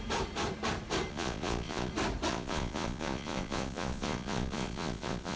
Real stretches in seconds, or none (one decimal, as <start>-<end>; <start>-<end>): 0.0-1.1; 1.9-2.3